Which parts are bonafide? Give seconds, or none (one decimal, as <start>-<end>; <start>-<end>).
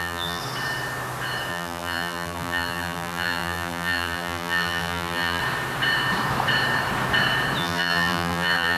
0.4-1.5; 5.4-7.6